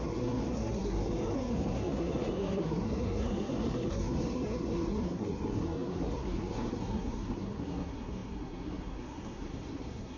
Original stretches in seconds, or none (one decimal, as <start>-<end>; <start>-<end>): none